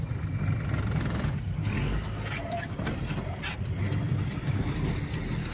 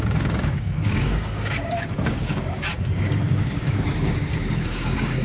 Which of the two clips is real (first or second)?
first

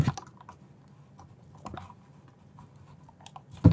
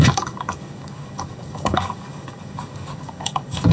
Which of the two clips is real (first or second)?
first